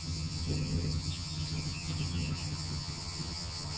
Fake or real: fake